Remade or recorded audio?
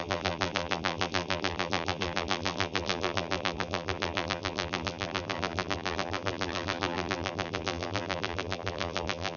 remade